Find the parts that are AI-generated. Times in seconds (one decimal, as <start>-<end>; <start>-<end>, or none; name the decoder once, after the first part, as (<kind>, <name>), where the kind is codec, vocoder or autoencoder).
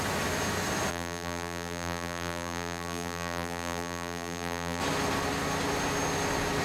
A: 0.9-4.8 (vocoder, BigVGAN v2)